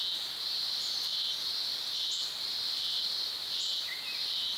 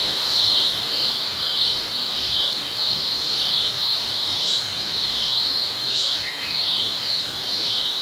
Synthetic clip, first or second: second